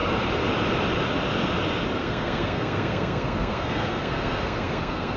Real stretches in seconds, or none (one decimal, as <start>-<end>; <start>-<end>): 0.0-2.0